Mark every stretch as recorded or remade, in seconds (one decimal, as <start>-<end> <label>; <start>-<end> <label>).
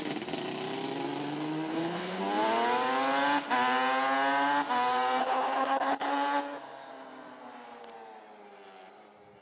0.0-1.7 recorded; 1.7-2.2 remade; 2.2-5.2 recorded; 5.2-6.1 remade; 6.1-9.4 recorded